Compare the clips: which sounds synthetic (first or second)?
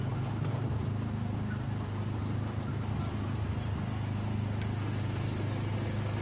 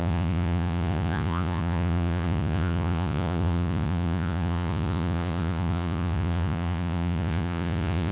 second